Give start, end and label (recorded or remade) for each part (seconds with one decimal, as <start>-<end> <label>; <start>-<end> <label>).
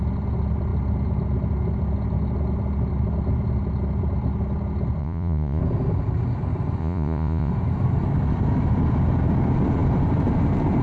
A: 0.0-5.0 recorded; 5.0-5.6 remade; 5.6-6.8 recorded; 6.8-7.5 remade; 7.5-10.8 recorded